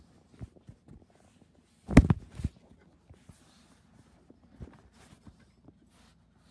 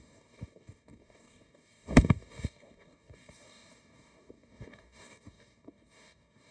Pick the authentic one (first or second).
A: first